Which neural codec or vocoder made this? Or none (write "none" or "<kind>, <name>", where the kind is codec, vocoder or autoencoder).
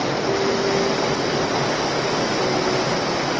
none